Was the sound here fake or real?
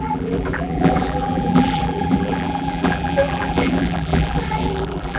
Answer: fake